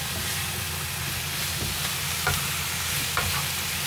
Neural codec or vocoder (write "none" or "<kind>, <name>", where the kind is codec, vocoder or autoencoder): none